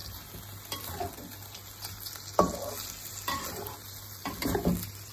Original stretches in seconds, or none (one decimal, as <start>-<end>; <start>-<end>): 0.0-5.1